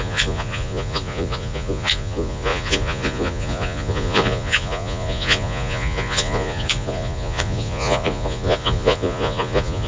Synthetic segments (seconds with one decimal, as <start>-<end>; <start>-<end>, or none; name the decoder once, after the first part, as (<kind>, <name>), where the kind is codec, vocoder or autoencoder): 0.0-9.9 (vocoder, Vocos)